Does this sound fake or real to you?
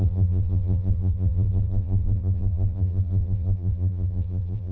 fake